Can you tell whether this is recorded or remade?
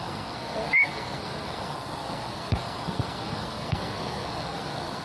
remade